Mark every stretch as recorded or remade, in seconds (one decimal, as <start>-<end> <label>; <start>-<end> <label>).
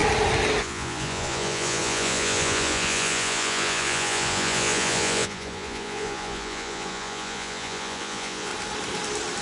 0.0-0.6 recorded; 0.6-8.5 remade; 8.5-9.4 recorded